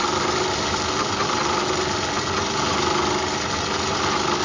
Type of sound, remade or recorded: recorded